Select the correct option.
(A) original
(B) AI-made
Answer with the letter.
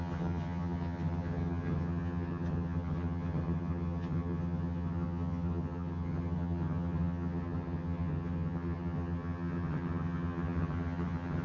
B